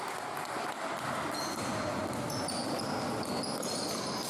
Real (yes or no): yes